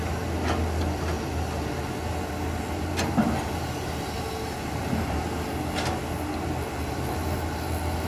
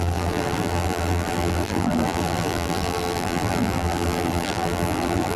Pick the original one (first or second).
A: first